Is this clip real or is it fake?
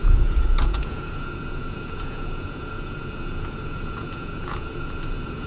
fake